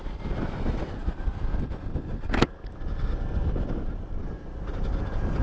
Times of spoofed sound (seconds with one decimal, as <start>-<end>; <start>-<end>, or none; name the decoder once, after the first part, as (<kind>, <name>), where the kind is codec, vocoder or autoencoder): none